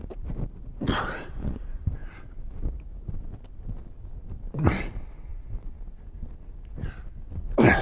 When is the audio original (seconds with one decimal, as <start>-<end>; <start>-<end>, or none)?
0.0-0.6; 1.6-7.8